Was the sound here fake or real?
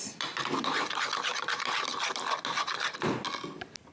real